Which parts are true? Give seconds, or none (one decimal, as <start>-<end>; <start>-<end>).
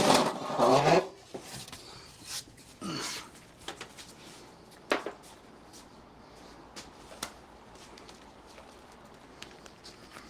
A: 0.0-0.7; 1.6-10.3